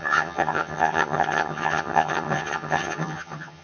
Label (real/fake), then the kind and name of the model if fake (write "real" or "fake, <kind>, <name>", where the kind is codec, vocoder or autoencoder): fake, vocoder, HiFi-GAN